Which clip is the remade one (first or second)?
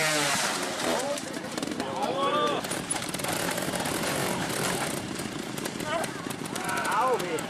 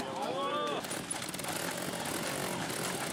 first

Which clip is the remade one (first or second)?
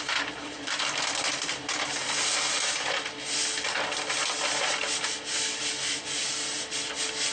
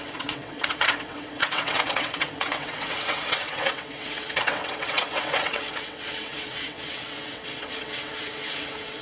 second